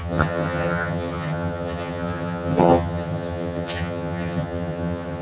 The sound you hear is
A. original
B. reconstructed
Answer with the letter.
B